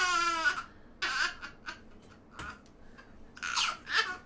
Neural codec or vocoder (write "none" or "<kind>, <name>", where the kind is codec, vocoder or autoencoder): none